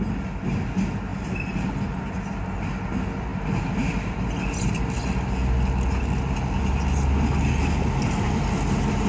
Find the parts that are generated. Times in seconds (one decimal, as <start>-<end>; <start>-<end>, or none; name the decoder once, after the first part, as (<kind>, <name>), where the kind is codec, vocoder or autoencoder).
none